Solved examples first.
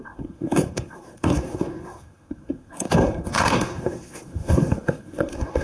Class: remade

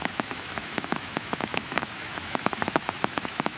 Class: remade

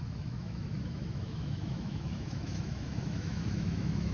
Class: remade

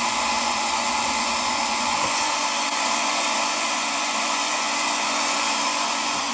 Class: remade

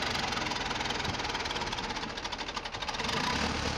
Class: recorded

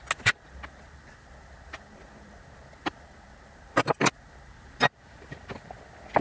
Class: recorded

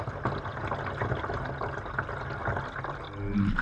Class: recorded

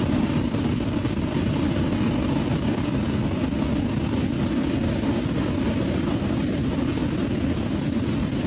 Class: recorded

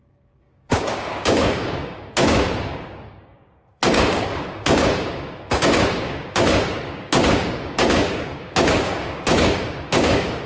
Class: remade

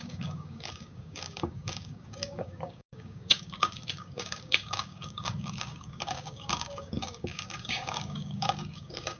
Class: remade